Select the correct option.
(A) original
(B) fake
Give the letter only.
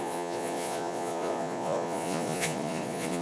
B